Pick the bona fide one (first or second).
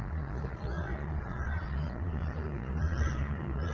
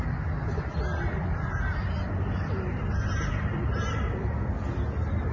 second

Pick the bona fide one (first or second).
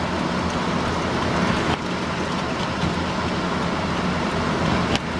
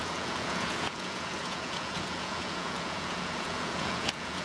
first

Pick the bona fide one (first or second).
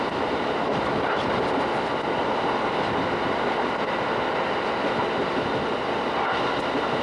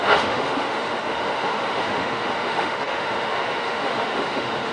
first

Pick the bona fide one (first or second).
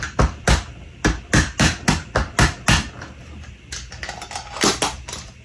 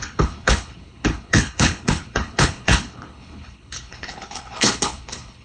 first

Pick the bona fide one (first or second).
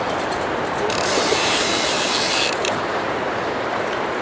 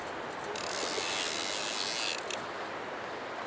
second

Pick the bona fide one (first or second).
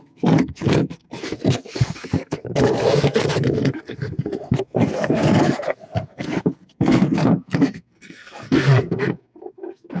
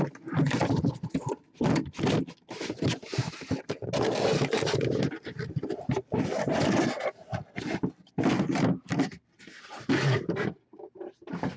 second